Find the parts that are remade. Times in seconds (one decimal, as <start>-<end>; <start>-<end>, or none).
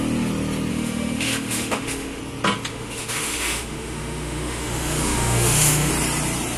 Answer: 0.7-2.2; 2.7-5.9